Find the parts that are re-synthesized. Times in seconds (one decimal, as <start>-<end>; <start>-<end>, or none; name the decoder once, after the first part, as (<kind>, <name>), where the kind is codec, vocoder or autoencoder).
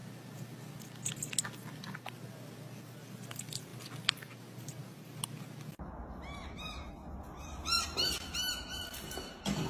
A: none